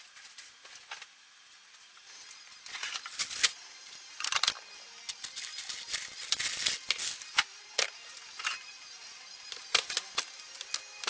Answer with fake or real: real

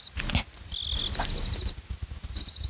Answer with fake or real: real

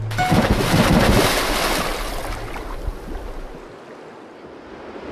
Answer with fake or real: real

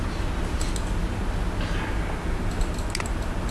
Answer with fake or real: real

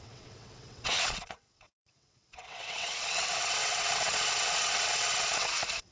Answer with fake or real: fake